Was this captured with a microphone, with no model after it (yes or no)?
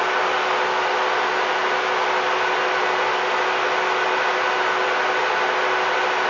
yes